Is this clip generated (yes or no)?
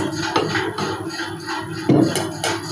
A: no